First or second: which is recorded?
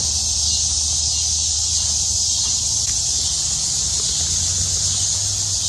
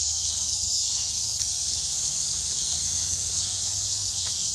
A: first